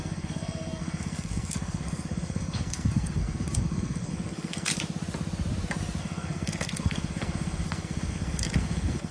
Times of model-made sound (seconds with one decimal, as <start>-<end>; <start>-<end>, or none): 0.0-4.7; 6.0-9.1